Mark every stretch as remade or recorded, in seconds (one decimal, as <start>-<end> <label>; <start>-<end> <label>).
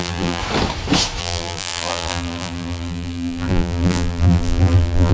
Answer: 0.0-0.4 remade; 0.4-1.2 recorded; 1.2-5.1 remade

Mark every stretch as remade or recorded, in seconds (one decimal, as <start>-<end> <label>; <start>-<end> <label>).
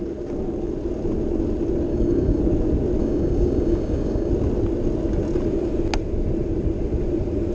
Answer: 0.0-1.9 recorded; 1.9-2.4 remade; 2.4-3.0 recorded; 3.0-4.3 remade; 4.3-7.5 recorded